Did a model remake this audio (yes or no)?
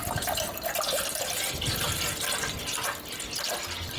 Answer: no